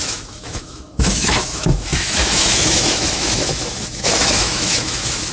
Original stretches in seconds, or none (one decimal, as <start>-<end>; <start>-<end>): none